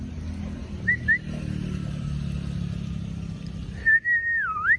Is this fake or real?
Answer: real